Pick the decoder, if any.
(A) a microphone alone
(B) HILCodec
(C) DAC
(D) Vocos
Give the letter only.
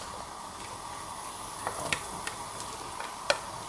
A